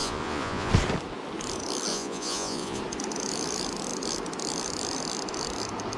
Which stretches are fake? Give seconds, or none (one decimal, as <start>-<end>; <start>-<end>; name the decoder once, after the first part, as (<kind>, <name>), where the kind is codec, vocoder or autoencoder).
0.0-0.7 (vocoder, Vocos); 1.9-2.8